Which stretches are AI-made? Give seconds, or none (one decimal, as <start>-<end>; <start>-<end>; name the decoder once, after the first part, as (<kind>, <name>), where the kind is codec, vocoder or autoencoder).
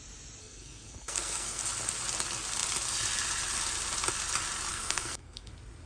0.4-1.6 (codec, SNAC); 4.7-5.5